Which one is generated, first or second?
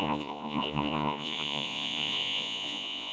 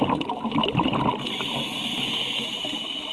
first